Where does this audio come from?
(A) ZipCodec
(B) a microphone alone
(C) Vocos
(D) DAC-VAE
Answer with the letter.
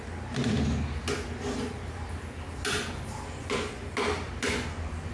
B